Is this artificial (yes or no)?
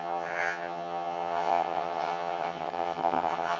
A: yes